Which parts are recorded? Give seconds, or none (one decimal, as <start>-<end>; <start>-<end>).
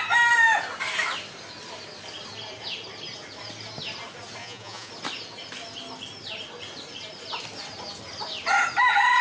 0.0-4.4; 4.9-9.2